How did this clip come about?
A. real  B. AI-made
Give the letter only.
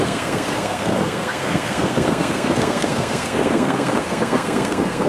B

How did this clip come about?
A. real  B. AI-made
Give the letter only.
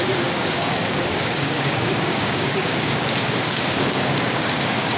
B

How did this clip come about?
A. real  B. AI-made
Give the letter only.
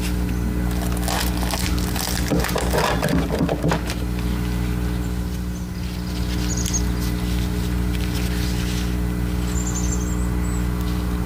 A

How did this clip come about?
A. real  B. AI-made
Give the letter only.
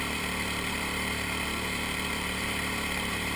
B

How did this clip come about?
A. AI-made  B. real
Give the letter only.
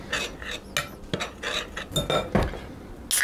B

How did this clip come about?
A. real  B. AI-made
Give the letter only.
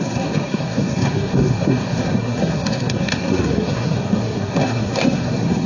B